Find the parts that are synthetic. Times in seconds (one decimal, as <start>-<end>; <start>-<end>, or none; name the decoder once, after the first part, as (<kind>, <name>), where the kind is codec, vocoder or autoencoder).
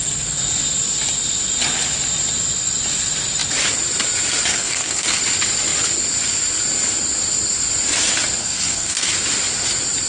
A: 4.5-5.2 (codec, SNAC); 8.4-9.1